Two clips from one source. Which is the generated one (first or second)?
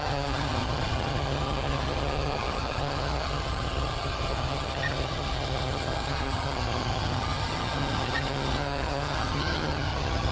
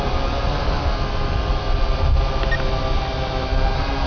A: first